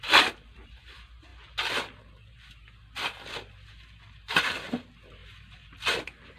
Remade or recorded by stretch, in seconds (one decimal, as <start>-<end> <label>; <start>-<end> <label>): 0.0-6.4 recorded